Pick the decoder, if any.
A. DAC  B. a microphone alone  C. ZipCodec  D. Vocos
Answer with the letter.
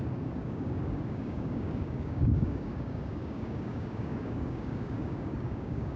A